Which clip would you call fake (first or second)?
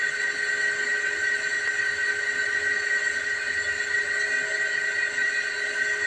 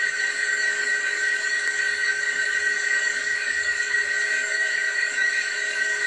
second